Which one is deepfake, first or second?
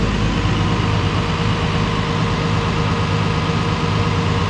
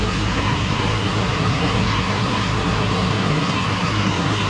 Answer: second